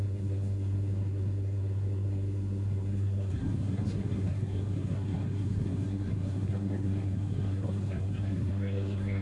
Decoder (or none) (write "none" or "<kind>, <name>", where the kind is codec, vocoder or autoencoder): codec, SNAC